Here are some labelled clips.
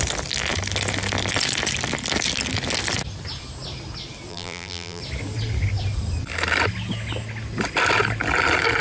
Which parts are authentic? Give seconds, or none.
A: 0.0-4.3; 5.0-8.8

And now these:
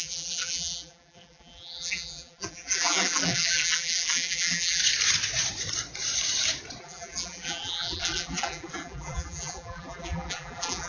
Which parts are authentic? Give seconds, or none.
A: 4.8-6.8

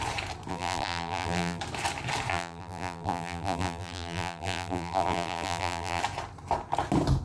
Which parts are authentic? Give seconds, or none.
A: 0.0-0.5; 1.6-2.3; 6.0-7.2

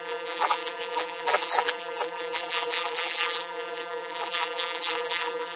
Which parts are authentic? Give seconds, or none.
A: none